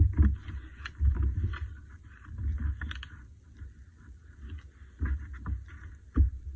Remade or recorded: recorded